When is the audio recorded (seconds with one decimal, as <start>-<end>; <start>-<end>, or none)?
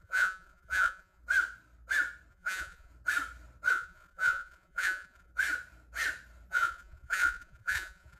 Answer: 1.2-2.3; 2.9-3.7; 5.3-6.5